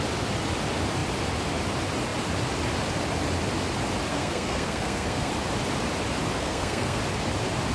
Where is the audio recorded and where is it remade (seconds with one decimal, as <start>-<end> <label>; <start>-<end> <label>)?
0.0-4.1 recorded; 4.1-5.3 remade; 5.3-6.4 recorded; 6.4-7.0 remade; 7.0-7.7 recorded